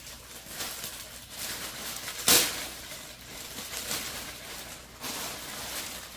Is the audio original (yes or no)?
yes